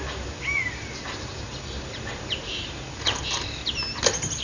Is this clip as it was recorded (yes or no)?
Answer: yes